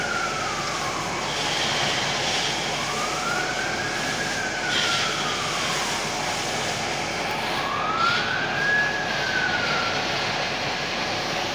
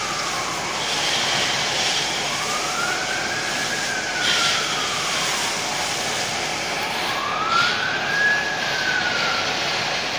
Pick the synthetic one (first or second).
second